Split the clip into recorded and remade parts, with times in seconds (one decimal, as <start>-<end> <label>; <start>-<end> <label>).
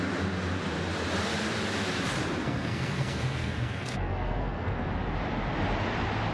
0.0-2.4 recorded; 2.4-4.9 remade; 4.9-6.3 recorded